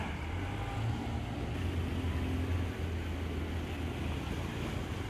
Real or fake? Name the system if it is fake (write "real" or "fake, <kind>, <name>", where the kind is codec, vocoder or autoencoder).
real